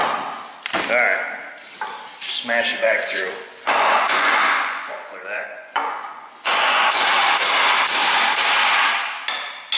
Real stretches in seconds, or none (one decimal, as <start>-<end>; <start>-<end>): 0.0-2.7; 7.0-9.8